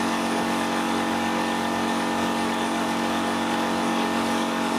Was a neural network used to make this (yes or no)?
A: yes